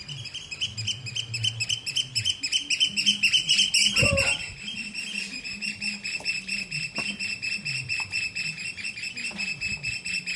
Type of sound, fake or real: real